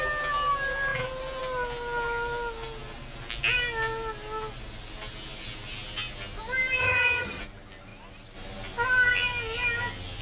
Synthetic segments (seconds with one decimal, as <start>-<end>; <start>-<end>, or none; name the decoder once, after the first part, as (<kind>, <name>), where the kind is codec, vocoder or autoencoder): 6.8-7.4 (vocoder, HiFi-GAN)